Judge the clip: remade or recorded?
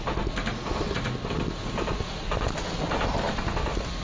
recorded